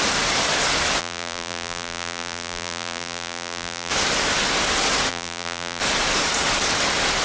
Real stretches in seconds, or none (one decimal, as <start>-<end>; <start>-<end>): 0.0-1.0; 3.9-5.1; 5.8-7.2